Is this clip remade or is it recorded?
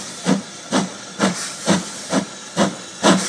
recorded